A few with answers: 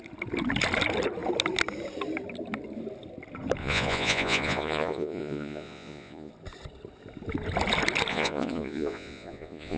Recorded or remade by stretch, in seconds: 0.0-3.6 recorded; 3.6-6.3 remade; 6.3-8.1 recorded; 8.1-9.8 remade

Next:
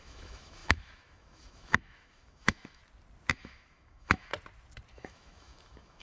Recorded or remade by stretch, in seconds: 0.0-2.8 remade; 2.8-3.3 recorded; 3.3-4.3 remade; 4.3-4.9 recorded; 4.9-6.0 remade

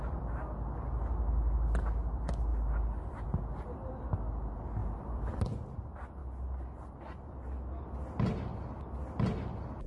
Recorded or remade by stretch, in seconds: 0.0-4.8 recorded; 4.8-5.4 remade; 5.4-9.9 recorded